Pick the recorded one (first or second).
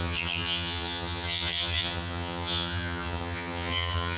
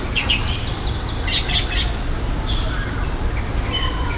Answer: second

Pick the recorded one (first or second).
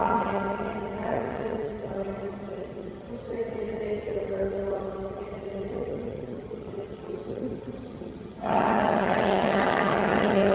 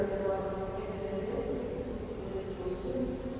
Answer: second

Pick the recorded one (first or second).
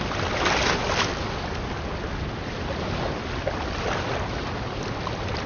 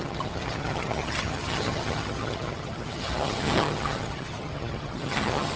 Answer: first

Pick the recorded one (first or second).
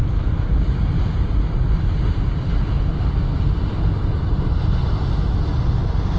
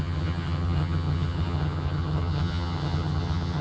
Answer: first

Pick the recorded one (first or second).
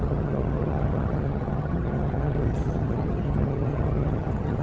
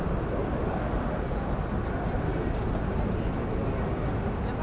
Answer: second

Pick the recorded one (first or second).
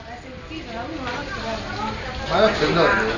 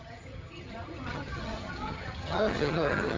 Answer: first